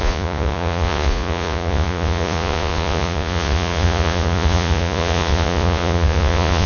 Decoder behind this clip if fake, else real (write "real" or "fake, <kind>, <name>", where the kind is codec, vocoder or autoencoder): fake, vocoder, Vocos